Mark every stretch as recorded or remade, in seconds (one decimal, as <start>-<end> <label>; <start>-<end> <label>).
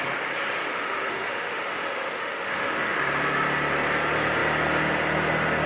0.0-0.7 recorded; 0.7-3.0 remade; 3.0-5.7 recorded